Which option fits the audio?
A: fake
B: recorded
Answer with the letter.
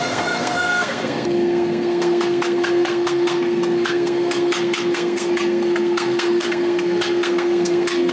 A